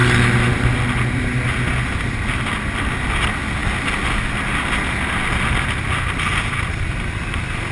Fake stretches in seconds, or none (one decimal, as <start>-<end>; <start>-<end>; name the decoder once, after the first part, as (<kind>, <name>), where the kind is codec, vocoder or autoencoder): none